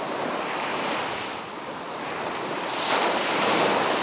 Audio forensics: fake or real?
real